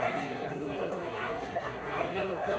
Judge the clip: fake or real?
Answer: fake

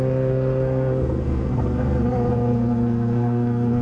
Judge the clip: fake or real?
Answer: fake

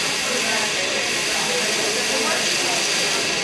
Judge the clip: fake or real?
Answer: real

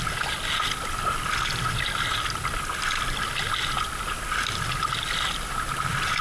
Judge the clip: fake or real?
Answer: real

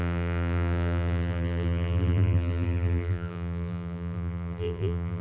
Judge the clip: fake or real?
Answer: fake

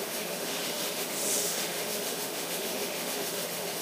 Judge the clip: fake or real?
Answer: fake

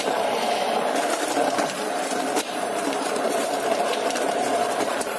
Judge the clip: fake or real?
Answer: fake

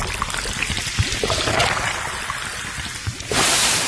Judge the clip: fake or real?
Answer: real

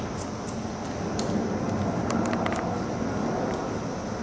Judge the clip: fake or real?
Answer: real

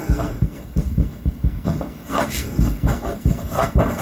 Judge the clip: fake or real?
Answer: fake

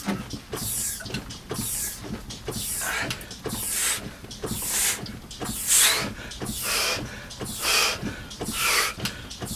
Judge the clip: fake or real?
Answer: real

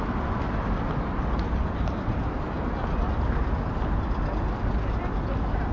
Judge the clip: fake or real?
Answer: real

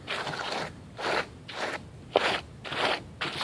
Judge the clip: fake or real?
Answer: real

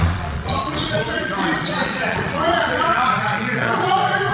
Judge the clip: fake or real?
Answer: fake